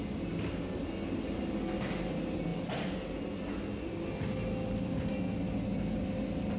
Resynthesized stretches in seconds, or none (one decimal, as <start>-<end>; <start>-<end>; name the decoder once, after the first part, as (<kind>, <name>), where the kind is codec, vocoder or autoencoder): none